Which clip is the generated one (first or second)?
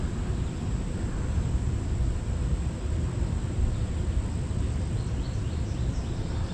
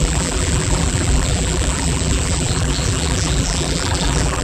second